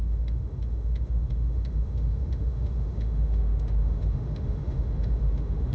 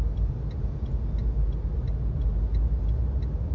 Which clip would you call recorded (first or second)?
second